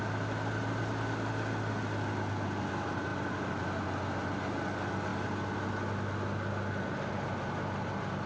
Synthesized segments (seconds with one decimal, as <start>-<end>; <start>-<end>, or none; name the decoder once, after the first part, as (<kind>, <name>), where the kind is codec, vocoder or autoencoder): none